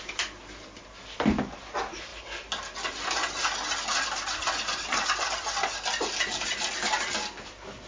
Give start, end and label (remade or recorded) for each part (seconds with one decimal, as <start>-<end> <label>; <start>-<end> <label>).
0.0-7.9 recorded